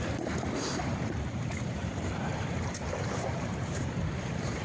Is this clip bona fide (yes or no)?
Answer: no